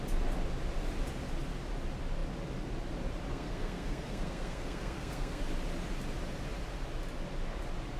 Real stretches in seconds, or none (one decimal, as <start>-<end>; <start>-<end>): 0.0-3.3; 5.4-8.0